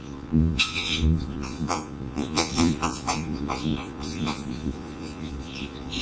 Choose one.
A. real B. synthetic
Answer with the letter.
B